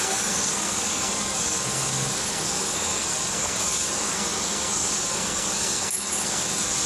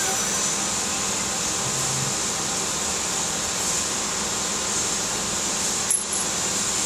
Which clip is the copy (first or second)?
first